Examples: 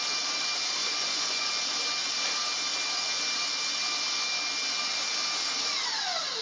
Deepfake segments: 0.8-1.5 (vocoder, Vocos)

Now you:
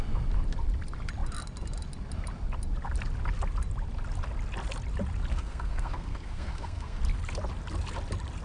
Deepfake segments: 5.3-7.0 (codec, SNAC)